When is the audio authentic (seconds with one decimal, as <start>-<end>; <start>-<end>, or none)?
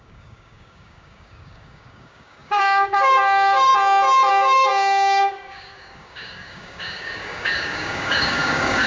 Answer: 3.7-4.3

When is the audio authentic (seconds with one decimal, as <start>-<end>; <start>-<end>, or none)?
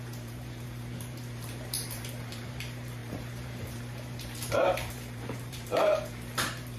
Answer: none